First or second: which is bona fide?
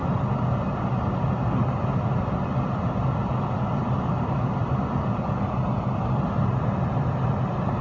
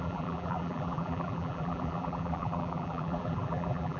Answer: first